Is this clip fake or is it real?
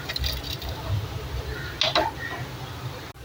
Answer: real